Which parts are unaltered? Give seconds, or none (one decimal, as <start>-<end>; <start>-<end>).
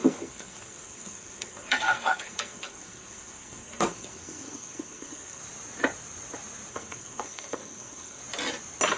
5.4-6.7; 8.2-9.0